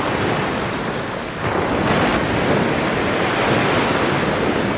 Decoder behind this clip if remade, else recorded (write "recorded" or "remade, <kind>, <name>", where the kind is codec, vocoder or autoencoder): recorded